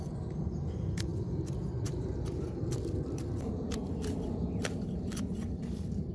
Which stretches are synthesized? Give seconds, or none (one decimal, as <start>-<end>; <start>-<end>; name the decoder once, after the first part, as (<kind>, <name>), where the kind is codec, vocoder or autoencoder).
0.0-6.1 (vocoder, BigVGAN v2)